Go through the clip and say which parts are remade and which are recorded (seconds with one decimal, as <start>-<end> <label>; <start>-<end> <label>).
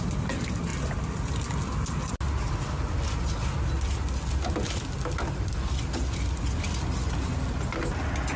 0.0-8.4 recorded